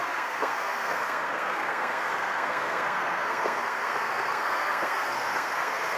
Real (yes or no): no